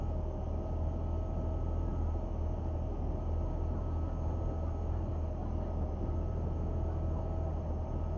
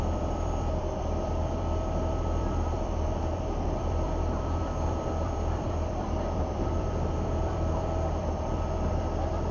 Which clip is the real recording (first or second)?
first